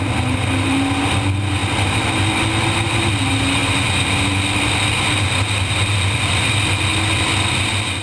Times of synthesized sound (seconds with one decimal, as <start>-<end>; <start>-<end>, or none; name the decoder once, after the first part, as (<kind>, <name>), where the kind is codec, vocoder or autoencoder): 0.0-3.6 (vocoder, BigVGAN v2); 6.2-6.9